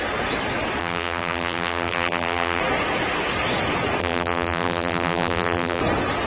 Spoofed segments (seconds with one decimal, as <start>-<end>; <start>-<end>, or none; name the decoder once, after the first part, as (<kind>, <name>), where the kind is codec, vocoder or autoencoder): 0.8-2.6 (vocoder, BigVGAN v2); 4.0-5.8